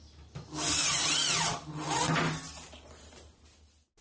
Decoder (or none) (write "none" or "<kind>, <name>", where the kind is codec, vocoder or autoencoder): none